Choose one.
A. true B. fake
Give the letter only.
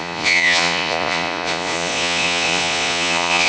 B